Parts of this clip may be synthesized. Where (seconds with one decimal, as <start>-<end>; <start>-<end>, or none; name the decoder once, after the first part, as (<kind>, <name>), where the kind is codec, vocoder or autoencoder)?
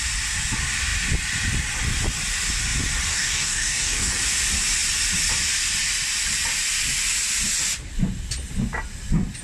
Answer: 3.1-4.1 (codec, DAC)